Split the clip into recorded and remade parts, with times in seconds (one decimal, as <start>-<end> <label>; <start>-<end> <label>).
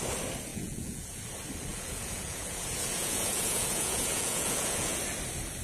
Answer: 0.0-0.5 recorded; 0.5-1.2 remade; 1.2-1.7 recorded; 1.7-5.0 remade; 5.0-5.6 recorded